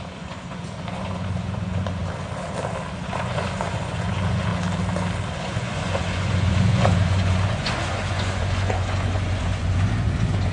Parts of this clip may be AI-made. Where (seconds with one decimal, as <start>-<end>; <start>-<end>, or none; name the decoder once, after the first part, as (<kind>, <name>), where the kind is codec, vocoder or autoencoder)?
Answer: 0.0-2.0 (vocoder, Vocos); 2.9-4.5; 5.4-10.5